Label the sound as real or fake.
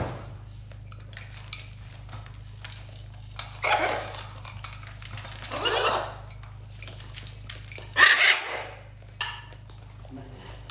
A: real